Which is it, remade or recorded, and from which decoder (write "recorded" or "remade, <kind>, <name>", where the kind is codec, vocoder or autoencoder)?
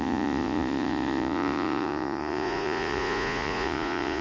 remade, vocoder, Vocos